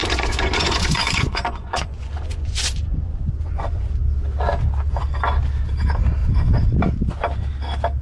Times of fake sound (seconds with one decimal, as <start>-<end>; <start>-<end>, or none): 0.0-4.0